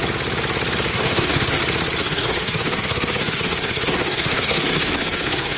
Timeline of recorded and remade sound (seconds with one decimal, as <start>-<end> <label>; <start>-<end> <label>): 0.0-0.9 recorded; 0.9-1.6 remade; 1.6-2.0 recorded; 2.0-5.6 remade

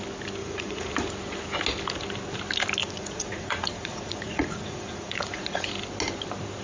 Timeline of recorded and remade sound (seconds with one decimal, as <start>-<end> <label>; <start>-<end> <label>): 0.0-0.4 recorded; 0.4-0.9 remade; 0.9-2.8 recorded; 2.8-5.7 remade; 5.7-6.6 recorded

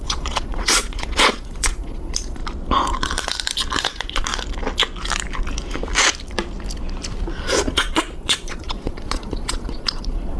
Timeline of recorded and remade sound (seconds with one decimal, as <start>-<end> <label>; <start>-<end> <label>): 0.0-2.4 remade; 2.4-3.8 recorded; 3.8-4.3 remade; 4.3-7.7 recorded; 7.7-10.4 remade

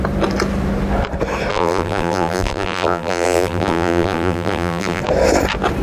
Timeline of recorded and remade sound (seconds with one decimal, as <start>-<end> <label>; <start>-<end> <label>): 0.0-1.5 recorded; 1.5-5.0 remade; 5.0-5.8 recorded

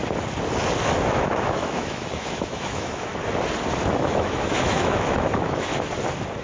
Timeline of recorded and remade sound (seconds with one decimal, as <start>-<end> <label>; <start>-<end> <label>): 0.0-1.1 recorded; 1.1-3.1 remade; 3.1-3.9 recorded; 3.9-5.7 remade; 5.7-6.4 recorded

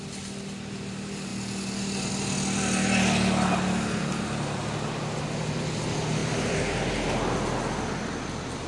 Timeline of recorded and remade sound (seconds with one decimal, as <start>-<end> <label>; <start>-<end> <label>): 0.0-8.7 recorded

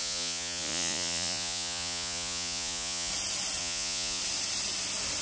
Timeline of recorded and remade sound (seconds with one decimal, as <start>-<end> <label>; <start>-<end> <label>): 0.0-3.1 remade; 3.1-3.6 recorded; 3.6-4.2 remade; 4.2-5.2 recorded

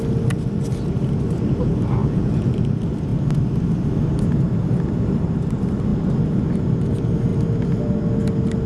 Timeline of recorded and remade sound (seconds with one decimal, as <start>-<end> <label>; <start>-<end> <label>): 0.0-2.0 recorded; 2.0-2.5 remade; 2.5-8.7 recorded